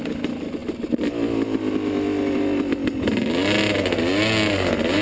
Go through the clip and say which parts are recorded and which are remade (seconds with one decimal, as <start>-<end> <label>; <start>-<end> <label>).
0.0-5.0 recorded